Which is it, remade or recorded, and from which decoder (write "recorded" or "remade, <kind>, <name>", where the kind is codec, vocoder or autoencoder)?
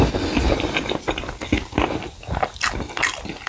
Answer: recorded